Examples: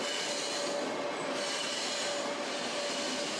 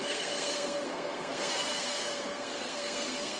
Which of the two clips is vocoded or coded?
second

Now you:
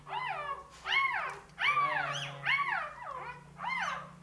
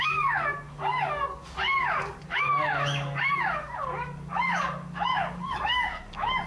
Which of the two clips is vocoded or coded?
second